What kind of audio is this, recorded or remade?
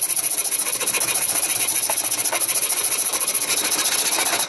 recorded